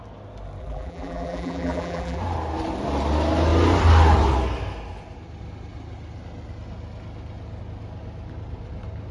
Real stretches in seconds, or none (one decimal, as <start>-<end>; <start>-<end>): 0.0-0.6; 2.2-9.1